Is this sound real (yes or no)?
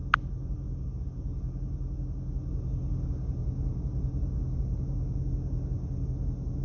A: yes